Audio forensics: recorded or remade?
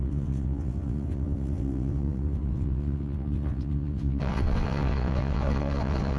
remade